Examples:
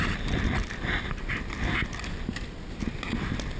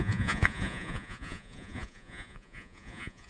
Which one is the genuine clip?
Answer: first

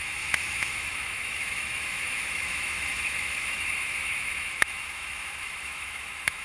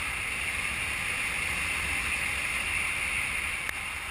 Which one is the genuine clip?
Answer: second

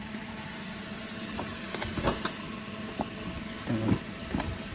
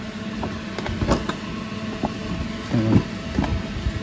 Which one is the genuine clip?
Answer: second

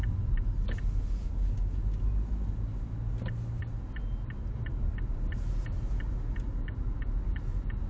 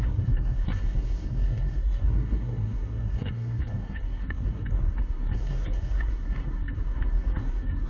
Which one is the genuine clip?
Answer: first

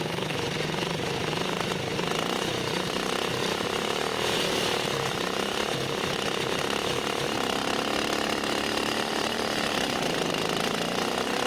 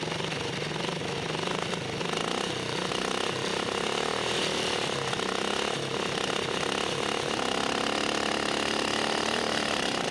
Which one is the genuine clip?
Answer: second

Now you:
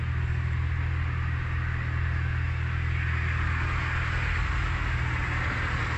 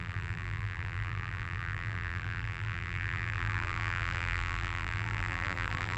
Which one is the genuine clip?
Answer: first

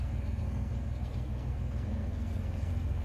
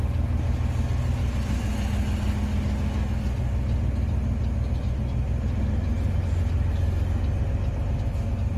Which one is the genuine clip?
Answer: second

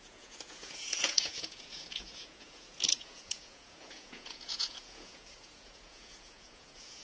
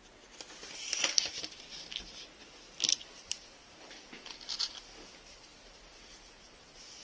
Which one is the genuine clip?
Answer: second